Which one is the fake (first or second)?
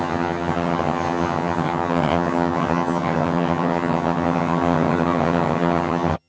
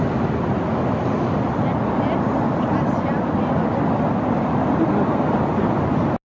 first